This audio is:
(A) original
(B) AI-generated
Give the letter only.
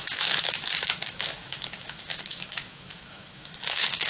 B